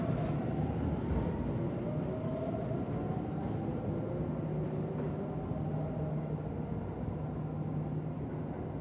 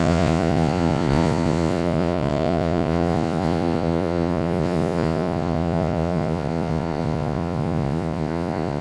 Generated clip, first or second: second